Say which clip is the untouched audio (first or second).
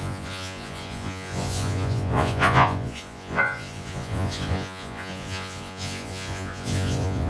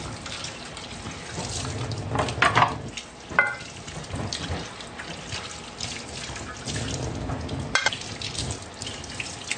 second